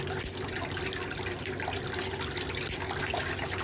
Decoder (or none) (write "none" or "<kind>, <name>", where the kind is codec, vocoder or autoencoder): none